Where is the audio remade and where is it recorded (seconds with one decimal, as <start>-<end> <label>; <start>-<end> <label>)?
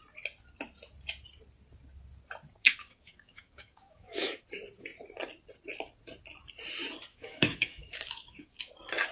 0.0-2.6 recorded; 2.6-4.4 remade; 4.4-7.1 recorded; 7.1-8.7 remade; 8.7-9.1 recorded